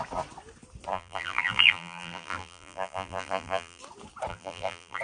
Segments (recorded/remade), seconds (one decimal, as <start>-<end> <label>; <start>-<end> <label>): 0.0-0.9 recorded; 0.9-3.8 remade; 3.8-4.3 recorded; 4.3-5.0 remade